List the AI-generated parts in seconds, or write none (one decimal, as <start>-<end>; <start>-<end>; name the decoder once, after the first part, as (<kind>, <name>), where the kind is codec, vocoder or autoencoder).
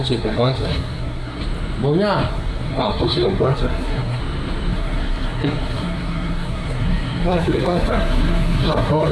0.0-1.4 (codec, SNAC); 2.3-4.2; 4.7-9.1